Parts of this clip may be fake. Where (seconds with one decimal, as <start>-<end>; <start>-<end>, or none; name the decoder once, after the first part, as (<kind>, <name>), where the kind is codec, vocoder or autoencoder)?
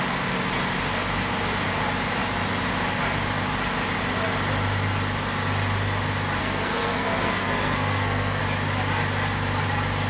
6.4-8.4 (codec, SNAC)